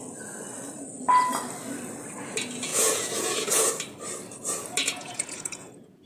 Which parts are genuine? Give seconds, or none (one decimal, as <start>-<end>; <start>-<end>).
0.0-2.7; 3.7-4.8